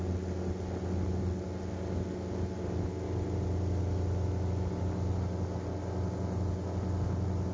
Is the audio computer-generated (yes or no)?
no